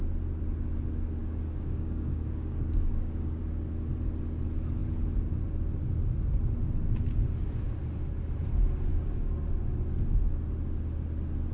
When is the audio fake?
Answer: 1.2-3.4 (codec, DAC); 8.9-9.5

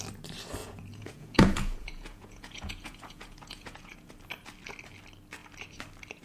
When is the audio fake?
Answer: 0.6-4.1 (vocoder, Vocos)

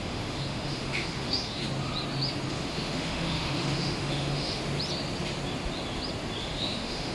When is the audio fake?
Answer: 0.0-1.6 (autoencoder, DAC-VAE); 2.5-4.6; 6.4-7.1

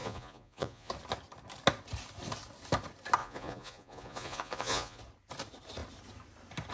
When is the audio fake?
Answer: 0.0-0.9 (vocoder, Vocos); 3.2-5.0

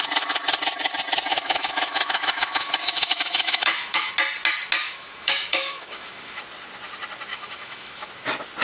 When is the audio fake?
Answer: 1.3-4.1 (autoencoder, DAC-VAE); 4.8-6.4; 7.3-8.1

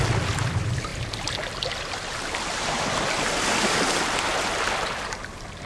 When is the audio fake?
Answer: none